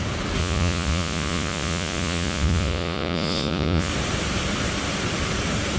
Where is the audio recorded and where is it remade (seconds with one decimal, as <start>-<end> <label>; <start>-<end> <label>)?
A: 0.0-0.4 recorded; 0.4-3.9 remade; 3.9-5.8 recorded